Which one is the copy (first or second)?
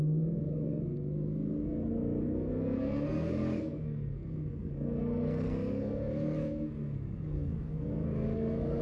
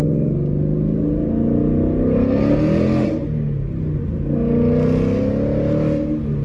first